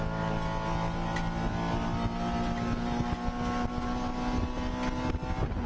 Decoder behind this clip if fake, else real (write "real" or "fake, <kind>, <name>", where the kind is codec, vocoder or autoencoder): real